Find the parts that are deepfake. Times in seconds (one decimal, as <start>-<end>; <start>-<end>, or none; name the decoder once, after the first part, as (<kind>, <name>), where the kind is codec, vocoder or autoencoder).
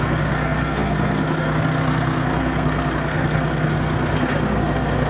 0.0-5.1 (codec, SNAC)